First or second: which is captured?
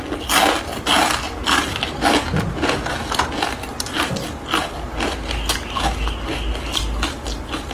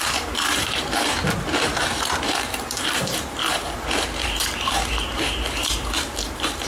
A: first